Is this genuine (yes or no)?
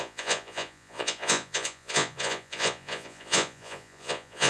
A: no